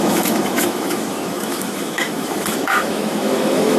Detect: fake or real fake